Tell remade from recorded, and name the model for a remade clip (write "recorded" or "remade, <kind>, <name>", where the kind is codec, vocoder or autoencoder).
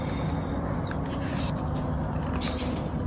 recorded